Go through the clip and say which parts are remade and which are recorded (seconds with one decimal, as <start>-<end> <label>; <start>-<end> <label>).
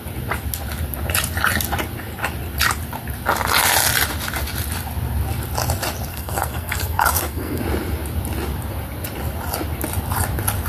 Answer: 0.0-6.1 recorded; 6.1-7.6 remade; 7.6-10.7 recorded